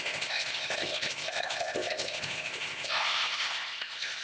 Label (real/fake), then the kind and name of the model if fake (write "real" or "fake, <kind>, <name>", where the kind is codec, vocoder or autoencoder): fake, codec, ZipCodec